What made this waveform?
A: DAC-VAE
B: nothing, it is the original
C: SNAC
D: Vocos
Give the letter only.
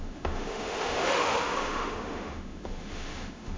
A